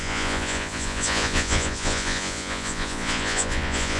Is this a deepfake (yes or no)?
yes